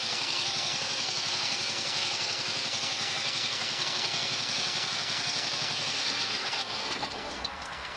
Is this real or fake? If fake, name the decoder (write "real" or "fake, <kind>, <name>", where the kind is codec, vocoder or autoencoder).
fake, codec, SNAC